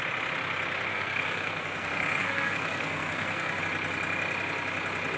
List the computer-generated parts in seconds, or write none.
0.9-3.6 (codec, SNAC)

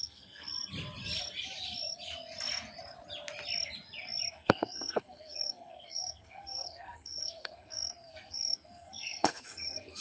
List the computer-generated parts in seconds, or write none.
0.0-0.5 (codec, SNAC); 4.3-10.0

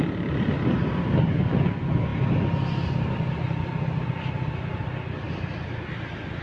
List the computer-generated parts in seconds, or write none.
none

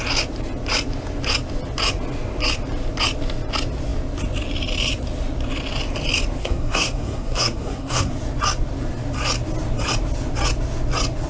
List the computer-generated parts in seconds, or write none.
6.4-8.1 (codec, SNAC)